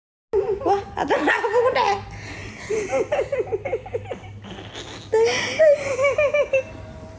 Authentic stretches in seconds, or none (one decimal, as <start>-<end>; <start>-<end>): 0.0-7.2